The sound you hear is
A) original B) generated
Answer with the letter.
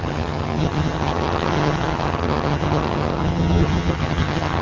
B